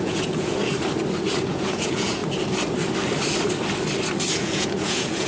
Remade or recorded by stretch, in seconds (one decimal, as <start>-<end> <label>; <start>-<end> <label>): 0.0-0.6 remade; 0.6-1.5 recorded; 1.5-2.2 remade; 2.2-4.3 recorded; 4.3-5.3 remade